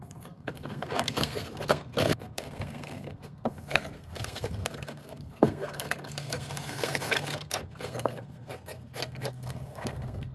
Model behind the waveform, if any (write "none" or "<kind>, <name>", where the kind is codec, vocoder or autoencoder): codec, SNAC